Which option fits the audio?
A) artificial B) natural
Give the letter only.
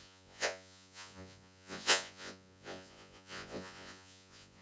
A